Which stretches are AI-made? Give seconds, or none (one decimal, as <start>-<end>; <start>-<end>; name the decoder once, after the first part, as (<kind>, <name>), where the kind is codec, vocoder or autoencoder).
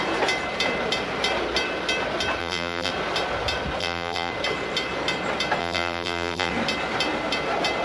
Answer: 2.4-2.9 (vocoder, BigVGAN v2); 3.8-4.3; 5.6-6.5